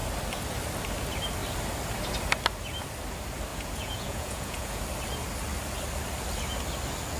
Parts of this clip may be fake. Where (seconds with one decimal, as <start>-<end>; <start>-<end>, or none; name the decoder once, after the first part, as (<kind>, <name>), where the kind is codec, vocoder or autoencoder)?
3.5-4.8 (vocoder, Vocos)